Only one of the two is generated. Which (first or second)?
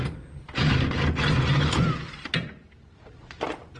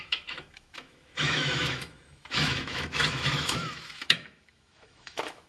second